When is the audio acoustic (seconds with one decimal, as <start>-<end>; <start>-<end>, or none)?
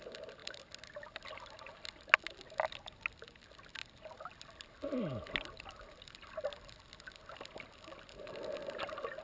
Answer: 0.0-9.2